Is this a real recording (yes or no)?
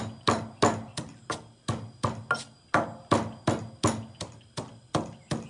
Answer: yes